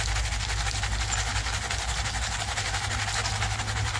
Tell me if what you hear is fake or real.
real